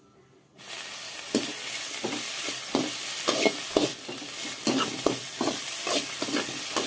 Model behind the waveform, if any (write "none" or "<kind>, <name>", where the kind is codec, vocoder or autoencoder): none